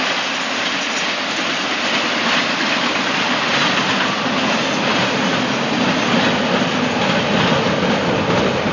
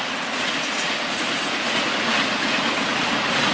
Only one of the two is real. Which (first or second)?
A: first